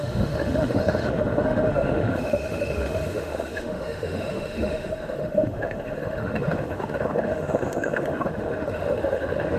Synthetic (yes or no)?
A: yes